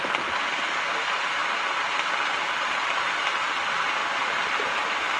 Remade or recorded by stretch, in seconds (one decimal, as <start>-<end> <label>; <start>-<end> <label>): 0.0-5.2 recorded